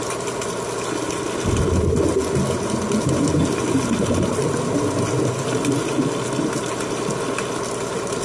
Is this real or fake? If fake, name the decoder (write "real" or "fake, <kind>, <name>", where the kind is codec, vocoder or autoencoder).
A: real